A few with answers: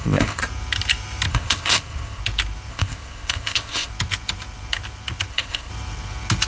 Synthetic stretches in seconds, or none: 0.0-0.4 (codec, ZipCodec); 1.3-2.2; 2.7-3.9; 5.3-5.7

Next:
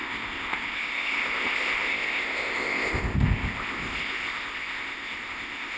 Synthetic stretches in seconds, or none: 0.0-5.8 (codec, ZipCodec)

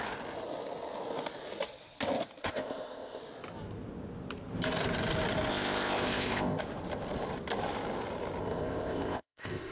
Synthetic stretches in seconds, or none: 2.4-3.2 (codec, ZipCodec); 5.5-6.6; 8.4-9.7

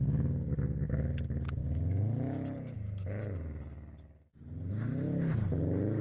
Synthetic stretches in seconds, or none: none

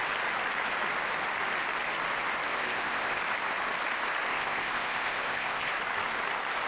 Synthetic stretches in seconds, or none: 2.5-3.2 (codec, ZipCodec); 4.3-5.7